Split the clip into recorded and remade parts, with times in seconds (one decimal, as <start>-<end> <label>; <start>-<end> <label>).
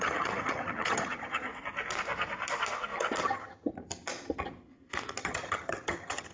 0.0-1.5 remade; 1.5-3.2 recorded; 3.2-3.7 remade; 3.7-5.2 recorded; 5.2-6.3 remade